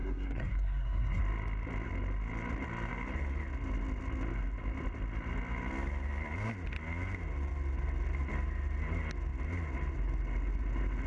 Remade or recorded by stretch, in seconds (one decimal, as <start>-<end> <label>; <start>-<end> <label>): 0.0-1.2 remade; 1.2-11.1 recorded